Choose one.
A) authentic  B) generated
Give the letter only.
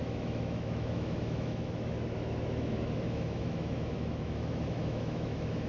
B